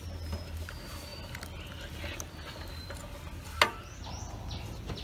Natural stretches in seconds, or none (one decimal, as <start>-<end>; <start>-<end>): 0.0-5.0